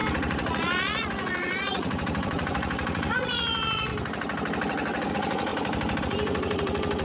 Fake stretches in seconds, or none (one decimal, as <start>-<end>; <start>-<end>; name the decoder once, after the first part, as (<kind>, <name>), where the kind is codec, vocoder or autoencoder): 0.0-3.9 (vocoder, Vocos); 5.1-5.5; 6.0-7.0